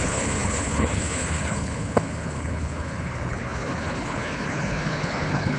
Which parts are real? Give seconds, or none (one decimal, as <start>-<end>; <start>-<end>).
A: none